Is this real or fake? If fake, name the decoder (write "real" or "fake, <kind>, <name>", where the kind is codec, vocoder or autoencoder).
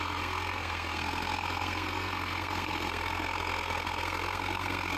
fake, codec, SNAC